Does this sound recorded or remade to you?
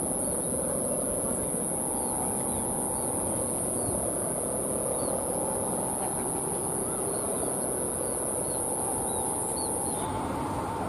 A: recorded